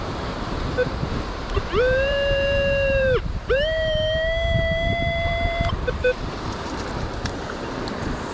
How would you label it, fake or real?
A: fake